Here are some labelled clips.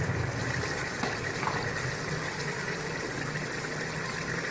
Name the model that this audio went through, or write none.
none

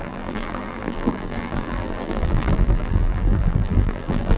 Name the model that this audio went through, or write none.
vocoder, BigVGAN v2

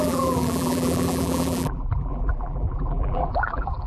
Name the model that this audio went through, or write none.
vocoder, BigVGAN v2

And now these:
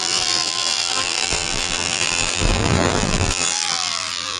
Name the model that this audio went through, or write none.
vocoder, BigVGAN v2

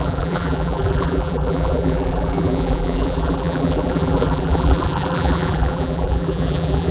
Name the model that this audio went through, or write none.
vocoder, BigVGAN v2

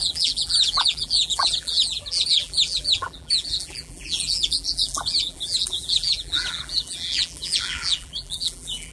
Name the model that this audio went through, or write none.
vocoder, BigVGAN v2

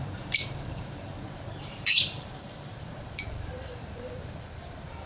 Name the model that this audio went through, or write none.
vocoder, BigVGAN v2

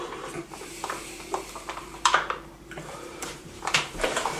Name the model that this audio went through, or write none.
vocoder, BigVGAN v2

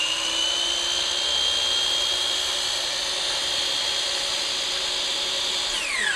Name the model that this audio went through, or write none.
none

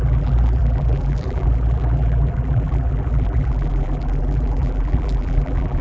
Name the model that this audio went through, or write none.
vocoder, BigVGAN v2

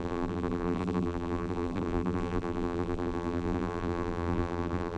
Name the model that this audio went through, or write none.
vocoder, BigVGAN v2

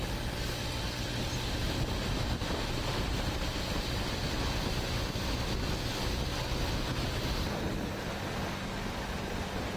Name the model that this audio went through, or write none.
none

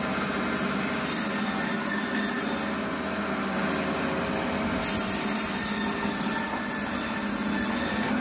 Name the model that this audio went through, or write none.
none